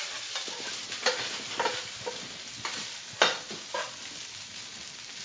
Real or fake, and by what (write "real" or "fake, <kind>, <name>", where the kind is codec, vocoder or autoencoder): real